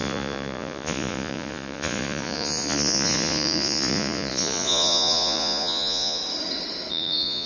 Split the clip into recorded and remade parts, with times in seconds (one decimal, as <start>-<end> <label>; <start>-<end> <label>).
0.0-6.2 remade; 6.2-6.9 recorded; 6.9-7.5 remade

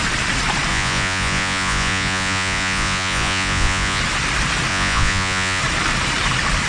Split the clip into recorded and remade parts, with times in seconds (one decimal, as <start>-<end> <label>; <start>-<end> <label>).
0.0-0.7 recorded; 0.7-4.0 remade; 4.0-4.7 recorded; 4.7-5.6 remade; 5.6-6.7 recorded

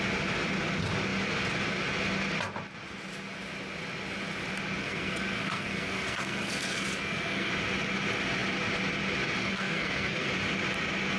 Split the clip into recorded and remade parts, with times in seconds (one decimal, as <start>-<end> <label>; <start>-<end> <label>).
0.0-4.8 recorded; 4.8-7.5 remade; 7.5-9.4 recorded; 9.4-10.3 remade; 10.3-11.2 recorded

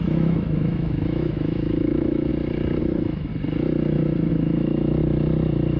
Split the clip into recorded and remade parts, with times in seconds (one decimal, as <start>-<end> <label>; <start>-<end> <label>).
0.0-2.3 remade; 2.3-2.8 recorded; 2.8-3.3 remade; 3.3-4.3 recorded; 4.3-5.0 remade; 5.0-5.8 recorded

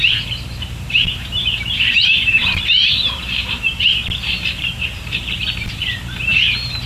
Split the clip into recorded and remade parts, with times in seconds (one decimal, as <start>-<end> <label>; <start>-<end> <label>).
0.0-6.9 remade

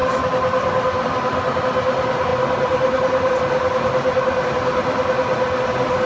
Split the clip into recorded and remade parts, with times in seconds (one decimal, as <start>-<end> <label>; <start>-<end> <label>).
0.0-6.1 recorded

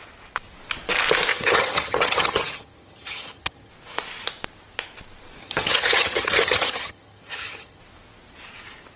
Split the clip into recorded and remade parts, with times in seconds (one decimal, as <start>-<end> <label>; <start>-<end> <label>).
0.0-1.3 recorded; 1.3-3.7 remade; 3.7-5.4 recorded; 5.4-7.8 remade; 7.8-9.0 recorded

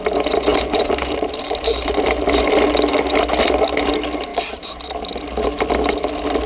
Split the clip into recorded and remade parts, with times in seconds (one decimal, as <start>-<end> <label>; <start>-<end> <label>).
0.0-0.5 recorded; 0.5-2.4 remade; 2.4-4.3 recorded; 4.3-4.8 remade; 4.8-6.5 recorded